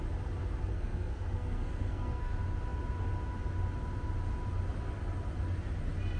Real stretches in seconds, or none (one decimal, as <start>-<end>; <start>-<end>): 0.0-0.7; 2.3-6.2

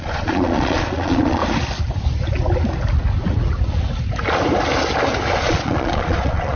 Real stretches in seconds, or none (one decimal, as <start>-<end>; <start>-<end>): 1.4-5.4

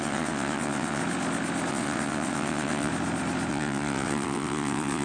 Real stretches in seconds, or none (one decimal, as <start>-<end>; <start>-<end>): 1.0-1.7; 2.9-3.5

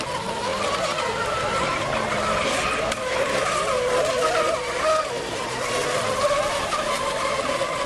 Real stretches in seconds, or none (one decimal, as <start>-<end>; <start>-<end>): 0.0-7.9

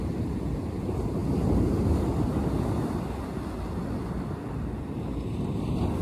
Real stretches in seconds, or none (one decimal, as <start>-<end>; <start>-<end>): 0.0-6.0

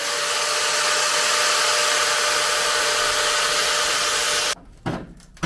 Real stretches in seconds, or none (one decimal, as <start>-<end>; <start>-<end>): 0.0-5.5